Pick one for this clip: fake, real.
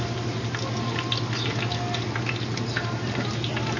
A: real